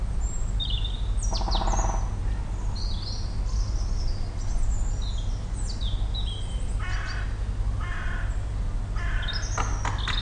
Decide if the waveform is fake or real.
real